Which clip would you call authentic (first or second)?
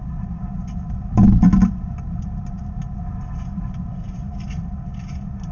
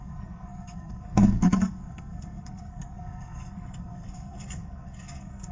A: first